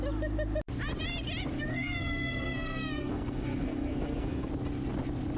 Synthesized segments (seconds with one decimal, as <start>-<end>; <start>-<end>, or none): 1.7-4.5